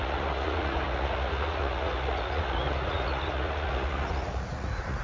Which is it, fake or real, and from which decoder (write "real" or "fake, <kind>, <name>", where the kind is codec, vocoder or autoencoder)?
fake, vocoder, Vocos